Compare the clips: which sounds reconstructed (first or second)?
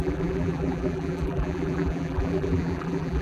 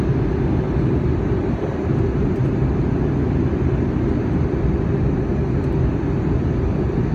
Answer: first